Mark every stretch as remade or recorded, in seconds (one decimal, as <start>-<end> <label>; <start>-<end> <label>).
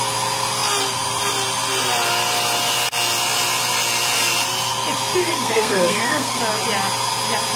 0.0-5.2 recorded; 5.2-6.4 remade; 6.4-7.6 recorded